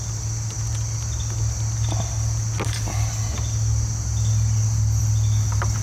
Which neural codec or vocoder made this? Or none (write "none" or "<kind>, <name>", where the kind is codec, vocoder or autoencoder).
none